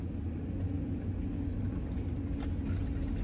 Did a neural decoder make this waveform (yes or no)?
no